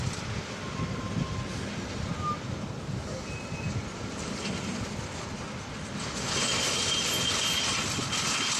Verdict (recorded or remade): recorded